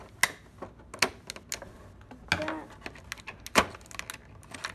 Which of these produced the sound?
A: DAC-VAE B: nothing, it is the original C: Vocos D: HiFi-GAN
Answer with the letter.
B